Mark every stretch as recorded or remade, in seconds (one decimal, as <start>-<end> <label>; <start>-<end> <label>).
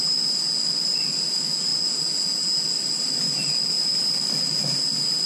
0.0-5.3 recorded